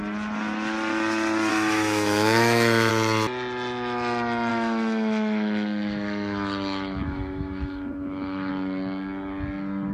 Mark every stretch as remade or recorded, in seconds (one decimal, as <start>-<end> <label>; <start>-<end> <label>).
0.0-1.5 recorded; 1.5-2.9 remade; 2.9-4.5 recorded; 4.5-8.5 remade; 8.5-9.9 recorded